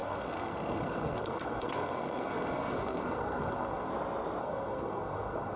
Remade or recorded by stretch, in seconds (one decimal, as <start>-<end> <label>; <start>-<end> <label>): 0.0-3.9 remade; 3.9-4.4 recorded; 4.4-5.6 remade